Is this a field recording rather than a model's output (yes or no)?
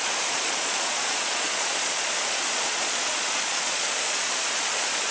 no